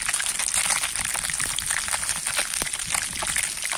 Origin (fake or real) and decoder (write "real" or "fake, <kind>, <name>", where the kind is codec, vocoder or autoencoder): real